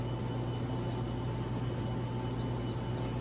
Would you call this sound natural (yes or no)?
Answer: yes